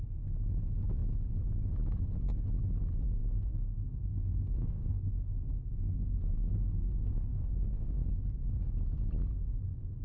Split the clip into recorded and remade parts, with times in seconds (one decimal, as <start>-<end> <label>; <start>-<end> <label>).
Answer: 0.0-3.2 recorded; 3.2-8.1 remade; 8.1-10.0 recorded